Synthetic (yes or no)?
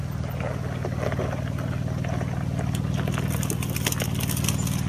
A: no